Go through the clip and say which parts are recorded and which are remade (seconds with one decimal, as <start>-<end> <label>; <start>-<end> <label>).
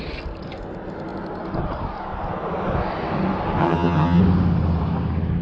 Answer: 0.0-3.6 recorded; 3.6-4.2 remade; 4.2-5.4 recorded